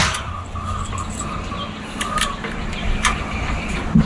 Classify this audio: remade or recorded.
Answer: remade